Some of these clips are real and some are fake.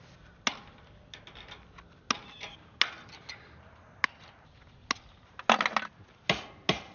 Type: real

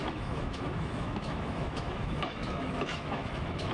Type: fake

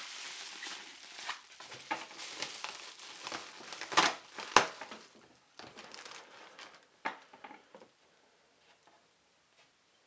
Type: real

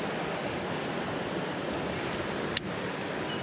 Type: real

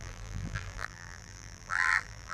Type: fake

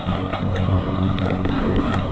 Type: fake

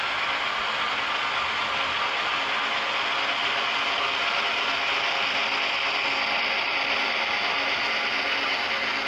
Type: real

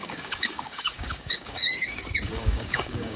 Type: fake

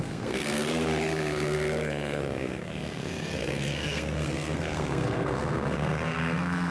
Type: fake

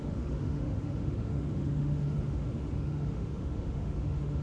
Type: fake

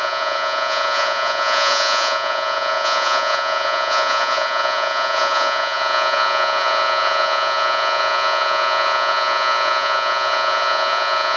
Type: fake